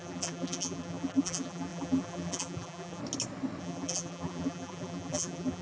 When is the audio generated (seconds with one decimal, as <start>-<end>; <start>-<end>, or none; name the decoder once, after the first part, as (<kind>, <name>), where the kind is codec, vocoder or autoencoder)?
0.0-3.0 (vocoder, BigVGAN v2); 3.6-5.6